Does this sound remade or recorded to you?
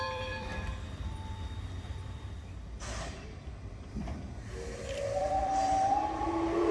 remade